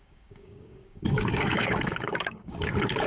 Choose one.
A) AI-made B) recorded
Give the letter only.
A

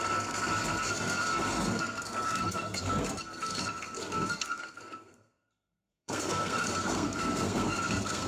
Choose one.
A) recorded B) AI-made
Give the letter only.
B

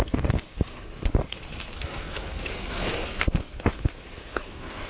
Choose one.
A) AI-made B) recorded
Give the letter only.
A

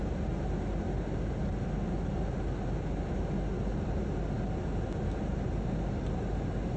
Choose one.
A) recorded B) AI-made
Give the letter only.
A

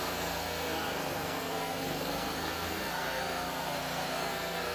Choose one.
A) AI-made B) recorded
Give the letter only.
A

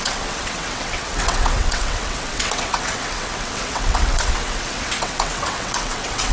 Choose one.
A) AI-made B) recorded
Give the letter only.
A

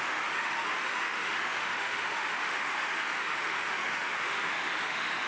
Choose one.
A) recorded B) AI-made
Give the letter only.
B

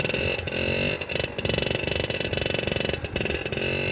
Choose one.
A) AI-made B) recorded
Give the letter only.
B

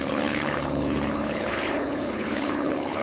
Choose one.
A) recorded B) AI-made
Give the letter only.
B